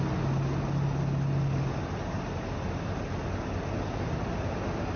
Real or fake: real